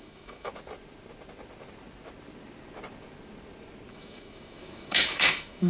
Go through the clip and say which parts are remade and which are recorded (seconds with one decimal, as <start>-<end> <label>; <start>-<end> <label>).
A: 0.0-0.5 remade; 0.5-3.9 recorded; 3.9-5.7 remade